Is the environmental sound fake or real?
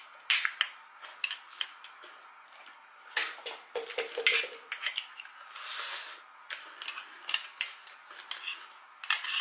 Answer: real